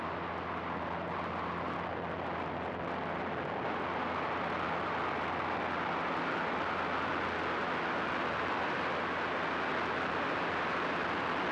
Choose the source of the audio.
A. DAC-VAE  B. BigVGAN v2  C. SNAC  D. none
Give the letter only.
D